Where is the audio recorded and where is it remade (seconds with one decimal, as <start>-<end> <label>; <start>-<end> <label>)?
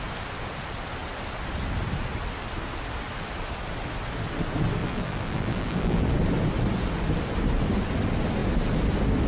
0.0-4.8 recorded; 4.8-6.1 remade; 6.1-9.3 recorded